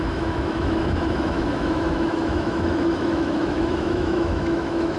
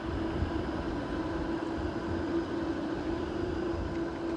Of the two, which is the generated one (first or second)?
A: first